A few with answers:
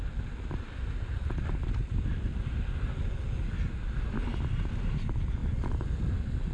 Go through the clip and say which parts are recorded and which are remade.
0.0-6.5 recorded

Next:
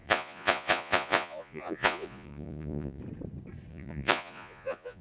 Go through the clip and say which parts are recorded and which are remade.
0.0-3.0 remade; 3.0-3.7 recorded; 3.7-5.0 remade

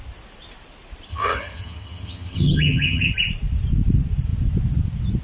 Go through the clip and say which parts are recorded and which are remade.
0.0-1.1 recorded; 1.1-3.1 remade; 3.1-5.2 recorded

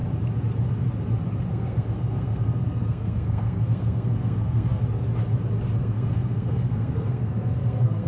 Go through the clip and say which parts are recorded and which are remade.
0.0-1.5 recorded; 1.5-4.8 remade; 4.8-5.8 recorded; 5.8-8.1 remade

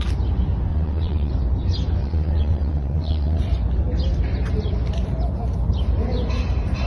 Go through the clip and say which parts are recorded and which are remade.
0.0-0.7 recorded; 0.7-1.3 remade; 1.3-2.0 recorded; 2.0-3.4 remade; 3.4-6.9 recorded

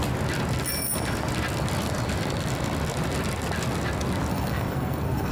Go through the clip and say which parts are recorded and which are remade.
0.0-4.3 recorded; 4.3-5.3 remade

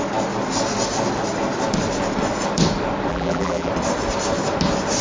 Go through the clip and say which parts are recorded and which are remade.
0.0-3.1 recorded; 3.1-3.7 remade; 3.7-5.0 recorded

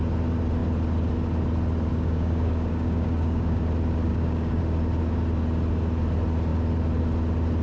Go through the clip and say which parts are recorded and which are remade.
0.0-1.9 recorded; 1.9-3.6 remade; 3.6-4.1 recorded; 4.1-4.6 remade; 4.6-7.6 recorded